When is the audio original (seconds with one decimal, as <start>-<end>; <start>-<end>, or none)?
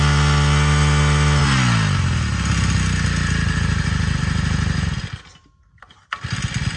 0.0-6.8